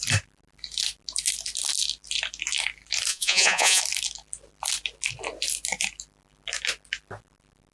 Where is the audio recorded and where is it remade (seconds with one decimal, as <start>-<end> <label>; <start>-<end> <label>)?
0.0-3.1 recorded; 3.1-3.8 remade; 3.8-7.7 recorded